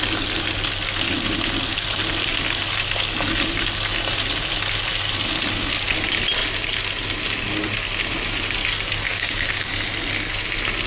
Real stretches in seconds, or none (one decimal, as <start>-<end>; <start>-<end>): 0.0-9.1; 9.7-10.9